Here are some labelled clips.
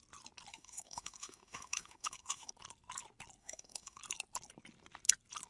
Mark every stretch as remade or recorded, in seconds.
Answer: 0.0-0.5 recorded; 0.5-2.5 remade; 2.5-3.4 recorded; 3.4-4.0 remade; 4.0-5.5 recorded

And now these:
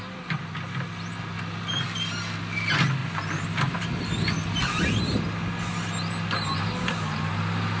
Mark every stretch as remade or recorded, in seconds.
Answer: 0.0-7.8 recorded

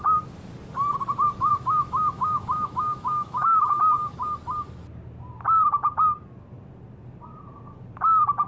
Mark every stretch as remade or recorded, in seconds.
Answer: 0.0-1.5 recorded; 1.5-3.8 remade; 3.8-8.5 recorded

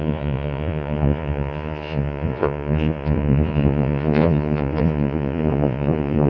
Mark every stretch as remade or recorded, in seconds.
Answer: 0.0-6.3 remade

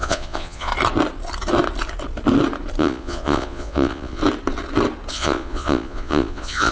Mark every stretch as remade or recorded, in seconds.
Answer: 0.0-0.7 remade; 0.7-2.8 recorded; 2.8-4.2 remade; 4.2-5.1 recorded; 5.1-6.7 remade